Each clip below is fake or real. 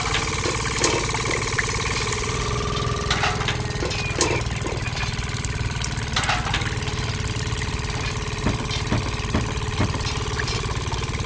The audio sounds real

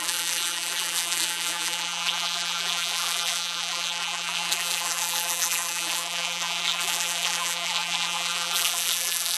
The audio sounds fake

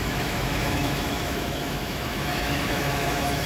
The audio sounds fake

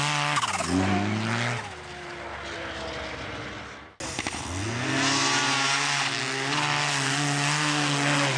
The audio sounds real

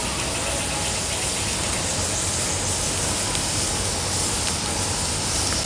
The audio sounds real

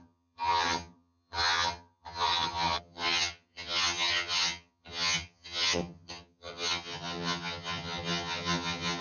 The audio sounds fake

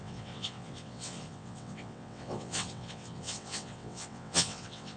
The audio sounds fake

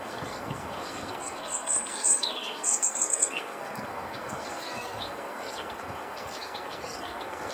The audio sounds fake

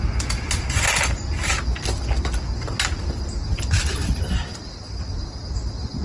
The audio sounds real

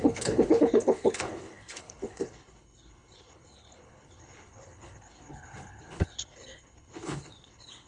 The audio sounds fake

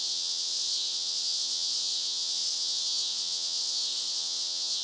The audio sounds fake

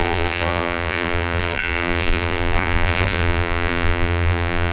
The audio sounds fake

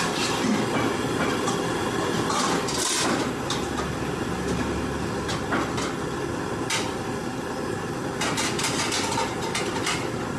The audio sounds real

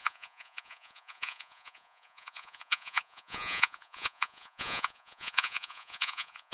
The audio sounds fake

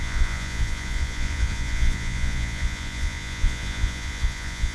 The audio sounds fake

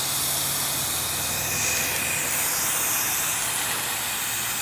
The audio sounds real